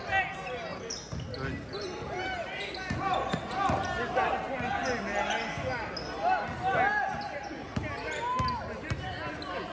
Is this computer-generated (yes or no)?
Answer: no